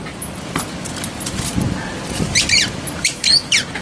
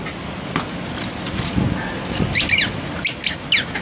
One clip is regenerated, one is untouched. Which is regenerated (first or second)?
first